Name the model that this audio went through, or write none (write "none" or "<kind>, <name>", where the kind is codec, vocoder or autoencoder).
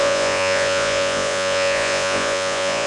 vocoder, Vocos